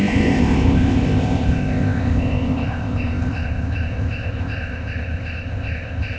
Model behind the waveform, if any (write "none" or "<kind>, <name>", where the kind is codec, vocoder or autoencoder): codec, ZipCodec